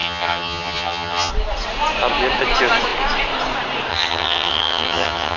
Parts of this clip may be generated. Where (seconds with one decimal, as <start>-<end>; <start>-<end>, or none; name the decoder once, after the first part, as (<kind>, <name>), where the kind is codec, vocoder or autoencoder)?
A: 0.0-1.3 (vocoder, HiFi-GAN); 3.9-5.4